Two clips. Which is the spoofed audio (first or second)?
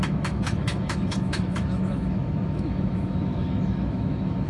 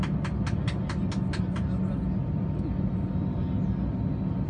first